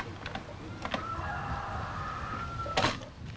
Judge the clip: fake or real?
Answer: real